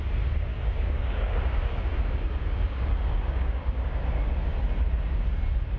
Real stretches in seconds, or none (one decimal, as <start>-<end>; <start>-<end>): 0.0-0.5; 4.0-5.8